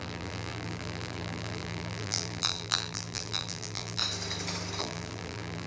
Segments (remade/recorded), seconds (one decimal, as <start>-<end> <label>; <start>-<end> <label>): 0.0-4.0 remade; 4.0-4.8 recorded; 4.8-5.7 remade